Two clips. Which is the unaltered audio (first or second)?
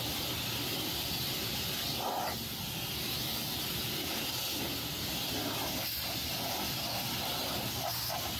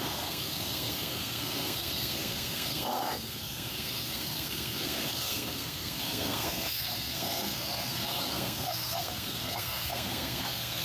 first